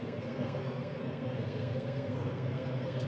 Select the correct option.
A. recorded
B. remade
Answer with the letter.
B